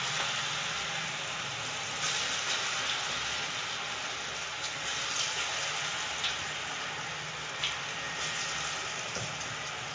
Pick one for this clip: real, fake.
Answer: real